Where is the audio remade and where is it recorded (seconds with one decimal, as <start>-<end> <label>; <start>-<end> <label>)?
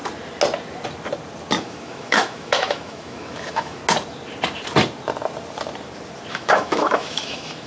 0.0-1.6 recorded; 1.6-3.8 remade; 3.8-6.3 recorded; 6.3-7.7 remade